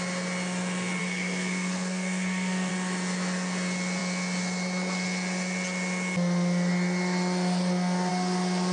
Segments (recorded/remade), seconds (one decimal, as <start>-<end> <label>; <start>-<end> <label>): 0.0-1.0 recorded; 1.0-2.7 remade; 2.7-8.7 recorded